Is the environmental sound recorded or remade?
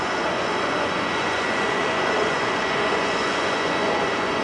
remade